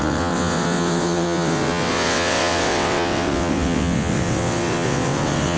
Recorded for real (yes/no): no